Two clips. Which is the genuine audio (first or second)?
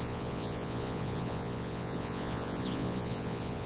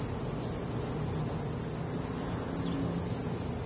second